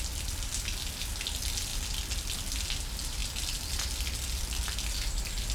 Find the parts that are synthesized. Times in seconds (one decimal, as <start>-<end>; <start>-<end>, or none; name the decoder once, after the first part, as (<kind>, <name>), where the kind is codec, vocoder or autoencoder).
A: none